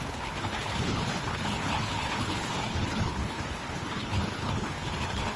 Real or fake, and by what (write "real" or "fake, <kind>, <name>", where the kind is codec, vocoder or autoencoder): fake, codec, HILCodec